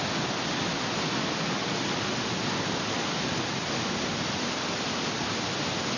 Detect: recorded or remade recorded